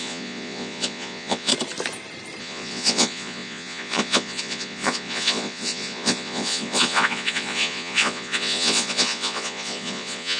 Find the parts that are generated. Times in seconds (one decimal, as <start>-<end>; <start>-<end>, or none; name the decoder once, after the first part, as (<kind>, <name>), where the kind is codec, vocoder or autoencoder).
0.0-1.5 (vocoder, Vocos); 2.4-10.4